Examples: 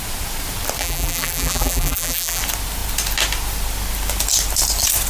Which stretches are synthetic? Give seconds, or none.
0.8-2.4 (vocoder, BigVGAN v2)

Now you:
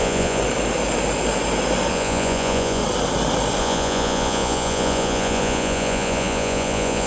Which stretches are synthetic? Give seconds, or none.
0.0-0.4 (vocoder, Vocos); 1.9-2.8; 3.6-7.1

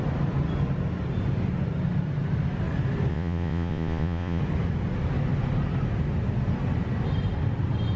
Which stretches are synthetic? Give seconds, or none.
3.1-4.4 (vocoder, Vocos)